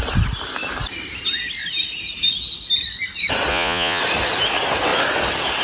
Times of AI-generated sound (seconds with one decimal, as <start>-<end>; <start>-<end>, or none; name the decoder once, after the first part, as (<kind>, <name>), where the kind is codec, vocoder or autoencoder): 3.5-4.0 (vocoder, Vocos)